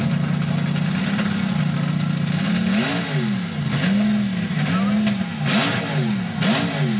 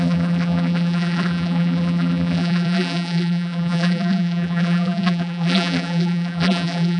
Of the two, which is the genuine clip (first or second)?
first